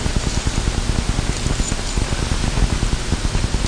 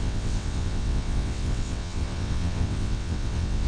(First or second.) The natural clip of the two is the first